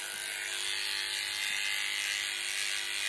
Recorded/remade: recorded